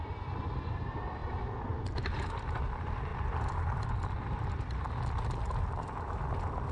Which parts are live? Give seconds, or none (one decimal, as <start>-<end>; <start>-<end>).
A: 0.0-1.2; 1.8-3.1; 4.7-6.7